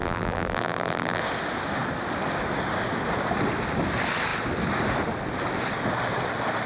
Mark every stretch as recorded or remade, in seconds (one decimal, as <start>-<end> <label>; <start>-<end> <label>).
0.0-1.2 remade; 1.2-6.7 recorded